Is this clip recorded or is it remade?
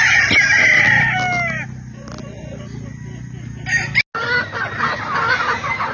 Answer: recorded